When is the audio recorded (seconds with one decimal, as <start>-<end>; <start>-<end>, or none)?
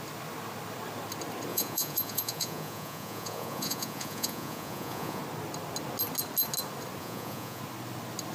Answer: 0.0-1.5; 5.2-7.0; 7.6-8.3